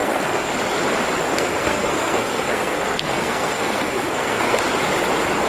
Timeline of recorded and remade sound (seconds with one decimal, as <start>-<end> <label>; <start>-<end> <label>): 0.0-0.5 remade; 0.5-1.3 recorded; 1.3-4.6 remade; 4.6-5.5 recorded